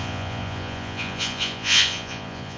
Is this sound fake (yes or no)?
yes